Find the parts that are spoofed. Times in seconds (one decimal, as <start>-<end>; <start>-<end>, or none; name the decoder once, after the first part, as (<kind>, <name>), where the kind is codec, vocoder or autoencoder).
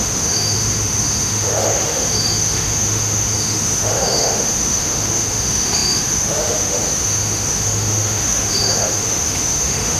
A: 0.0-10.0 (autoencoder, DAC-VAE)